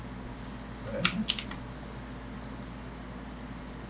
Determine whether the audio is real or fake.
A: real